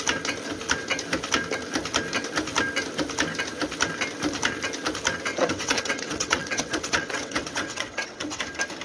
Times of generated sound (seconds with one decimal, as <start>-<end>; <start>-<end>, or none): 5.3-8.4

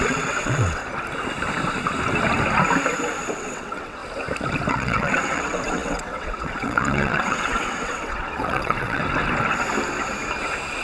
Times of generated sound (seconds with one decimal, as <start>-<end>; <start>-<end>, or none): 0.0-0.8; 3.4-4.0; 4.7-9.0

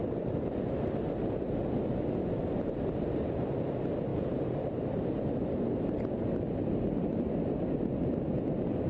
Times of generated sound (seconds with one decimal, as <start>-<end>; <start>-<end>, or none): none

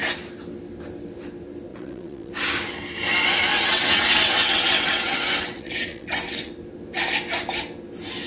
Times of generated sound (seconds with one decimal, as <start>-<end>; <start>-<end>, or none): 1.7-2.3; 3.5-6.5

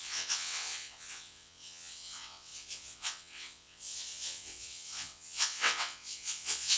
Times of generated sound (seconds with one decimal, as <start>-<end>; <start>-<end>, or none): 0.0-6.8

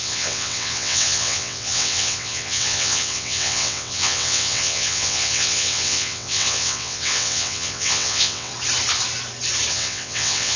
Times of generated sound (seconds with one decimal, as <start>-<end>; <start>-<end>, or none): 0.0-8.5; 9.7-10.6

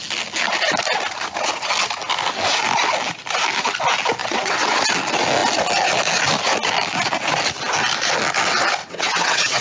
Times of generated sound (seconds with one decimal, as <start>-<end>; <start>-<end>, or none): 4.2-4.8; 8.8-9.6